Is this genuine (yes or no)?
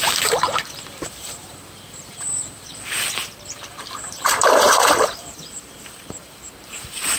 no